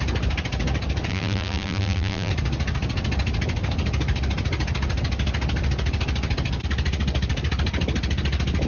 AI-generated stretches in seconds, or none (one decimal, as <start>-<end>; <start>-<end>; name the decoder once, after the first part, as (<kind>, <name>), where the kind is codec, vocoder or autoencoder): 1.1-2.3 (vocoder, BigVGAN v2)